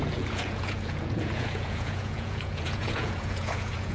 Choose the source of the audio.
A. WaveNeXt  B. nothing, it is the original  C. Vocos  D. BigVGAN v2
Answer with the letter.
C